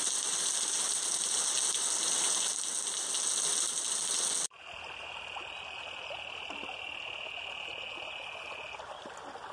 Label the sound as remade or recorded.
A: recorded